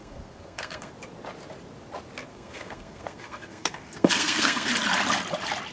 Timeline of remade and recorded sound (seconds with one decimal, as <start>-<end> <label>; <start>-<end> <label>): 0.0-0.9 remade; 0.9-2.3 recorded; 2.3-4.7 remade; 4.7-5.7 recorded